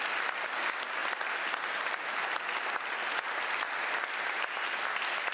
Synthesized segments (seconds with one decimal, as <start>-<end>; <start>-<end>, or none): none